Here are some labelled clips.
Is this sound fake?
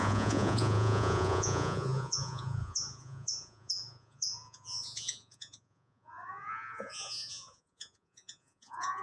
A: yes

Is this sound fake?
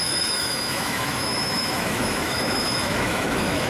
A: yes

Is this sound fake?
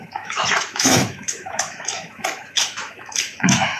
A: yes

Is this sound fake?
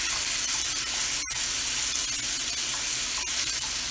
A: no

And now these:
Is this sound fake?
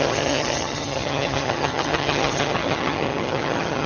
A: yes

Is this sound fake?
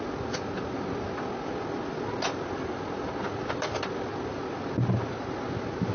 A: no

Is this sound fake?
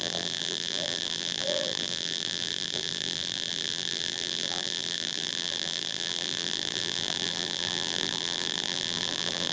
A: yes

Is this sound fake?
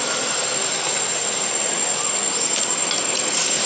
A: no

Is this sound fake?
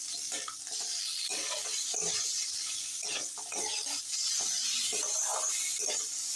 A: no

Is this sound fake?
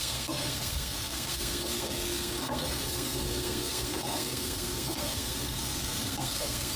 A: yes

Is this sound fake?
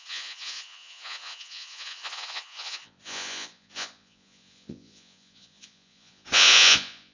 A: yes